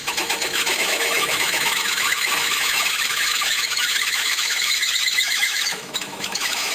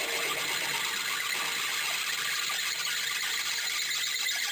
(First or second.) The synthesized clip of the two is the first